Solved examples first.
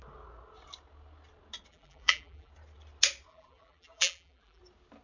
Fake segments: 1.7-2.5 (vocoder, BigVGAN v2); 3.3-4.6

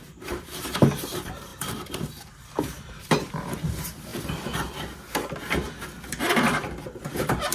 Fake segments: 0.0-4.1 (vocoder, BigVGAN v2); 6.1-7.5

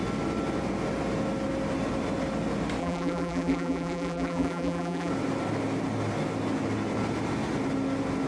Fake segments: 2.8-5.1 (vocoder, BigVGAN v2)

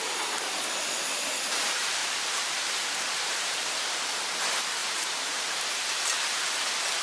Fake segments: 2.0-4.2 (vocoder, BigVGAN v2); 4.8-5.7

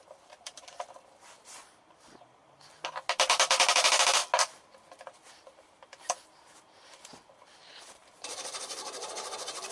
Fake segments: 0.0-2.4 (vocoder, BigVGAN v2); 3.7-4.2; 5.4-9.7

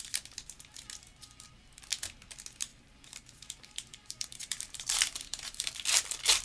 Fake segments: 1.1-1.8 (vocoder, BigVGAN v2); 2.7-5.7